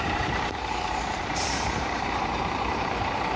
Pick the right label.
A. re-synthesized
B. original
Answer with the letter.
A